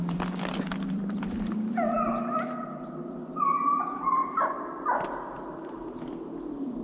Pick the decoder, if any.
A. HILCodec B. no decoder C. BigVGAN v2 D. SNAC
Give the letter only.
C